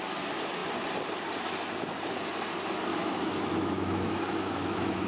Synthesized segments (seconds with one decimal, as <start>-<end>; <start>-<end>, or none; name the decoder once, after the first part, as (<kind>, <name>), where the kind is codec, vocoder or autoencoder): 2.9-5.1 (autoencoder, DAC-VAE)